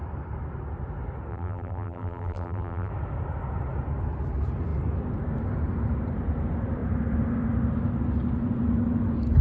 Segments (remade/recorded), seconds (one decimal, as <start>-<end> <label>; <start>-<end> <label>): 0.0-1.3 recorded; 1.3-2.9 remade; 2.9-9.4 recorded